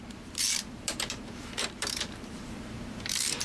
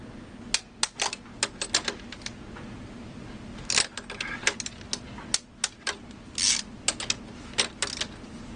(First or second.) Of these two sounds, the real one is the second